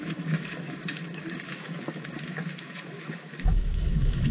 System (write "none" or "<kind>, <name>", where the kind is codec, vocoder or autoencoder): autoencoder, DAC-VAE